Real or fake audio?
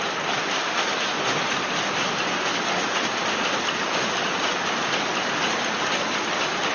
real